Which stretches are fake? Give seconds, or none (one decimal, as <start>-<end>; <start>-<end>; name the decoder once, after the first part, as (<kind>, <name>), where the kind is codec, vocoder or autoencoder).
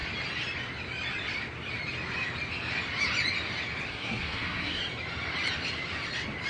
3.9-4.8 (codec, SNAC)